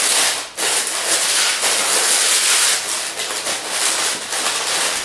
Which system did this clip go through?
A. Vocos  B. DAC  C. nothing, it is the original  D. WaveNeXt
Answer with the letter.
C